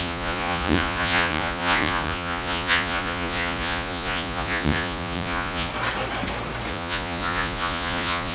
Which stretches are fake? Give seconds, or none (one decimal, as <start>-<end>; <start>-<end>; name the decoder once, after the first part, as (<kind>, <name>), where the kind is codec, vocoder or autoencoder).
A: 0.0-5.7 (vocoder, Vocos); 6.7-8.3